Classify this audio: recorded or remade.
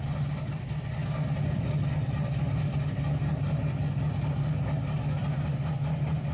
recorded